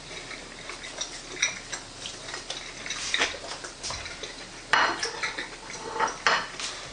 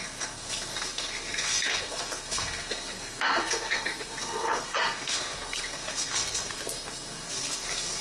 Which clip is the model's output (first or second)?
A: second